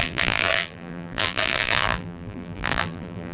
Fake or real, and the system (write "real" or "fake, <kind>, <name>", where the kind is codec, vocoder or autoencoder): fake, vocoder, BigVGAN v2